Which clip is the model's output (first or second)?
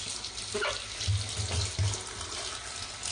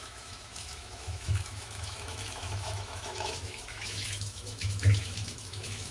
second